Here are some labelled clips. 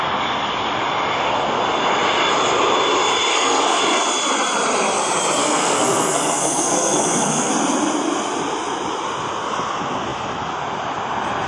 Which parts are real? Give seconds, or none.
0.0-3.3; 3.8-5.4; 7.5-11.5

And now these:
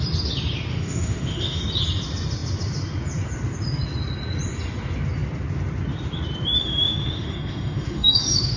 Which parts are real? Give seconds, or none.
0.0-0.7; 1.6-6.6

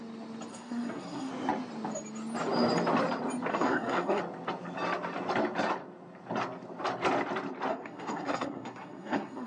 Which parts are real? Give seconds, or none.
0.0-0.5; 1.3-3.5; 4.2-7.7

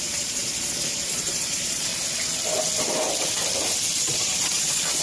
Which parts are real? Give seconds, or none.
1.9-4.0

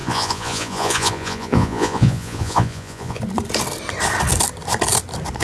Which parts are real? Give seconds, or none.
3.2-5.4